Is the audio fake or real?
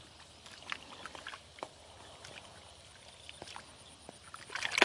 real